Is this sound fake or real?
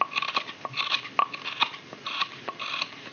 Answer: real